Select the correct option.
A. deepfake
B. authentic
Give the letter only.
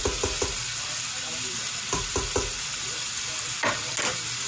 B